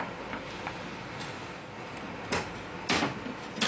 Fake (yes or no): no